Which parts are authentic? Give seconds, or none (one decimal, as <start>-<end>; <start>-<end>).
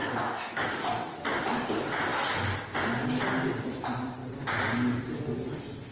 0.9-5.9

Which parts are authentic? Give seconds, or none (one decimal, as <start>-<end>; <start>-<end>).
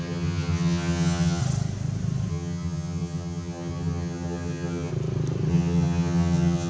1.4-2.3; 4.9-5.5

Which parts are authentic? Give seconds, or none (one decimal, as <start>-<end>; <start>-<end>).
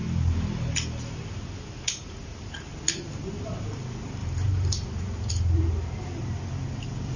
0.0-4.2; 5.3-7.2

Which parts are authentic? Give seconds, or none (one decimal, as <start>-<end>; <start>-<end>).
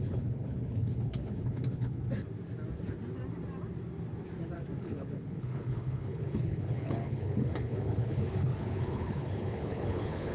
2.0-4.8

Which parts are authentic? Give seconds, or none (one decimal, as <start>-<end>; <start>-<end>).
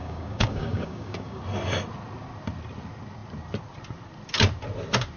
1.4-5.2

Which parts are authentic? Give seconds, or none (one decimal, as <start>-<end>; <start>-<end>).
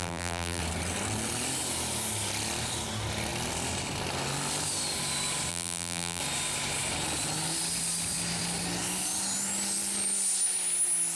0.6-5.5; 6.2-11.2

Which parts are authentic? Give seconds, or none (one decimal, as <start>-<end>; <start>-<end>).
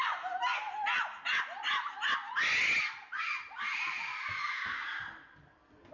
0.0-5.9